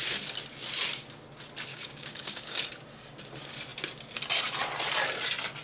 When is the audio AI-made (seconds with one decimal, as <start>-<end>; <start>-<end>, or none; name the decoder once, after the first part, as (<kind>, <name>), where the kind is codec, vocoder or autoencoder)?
1.7-2.6 (codec, DAC)